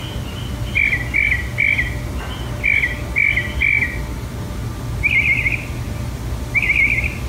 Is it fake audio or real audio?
real